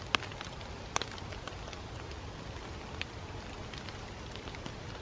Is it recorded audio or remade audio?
recorded